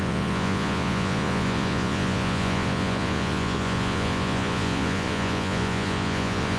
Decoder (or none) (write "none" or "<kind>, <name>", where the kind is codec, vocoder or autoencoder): vocoder, Vocos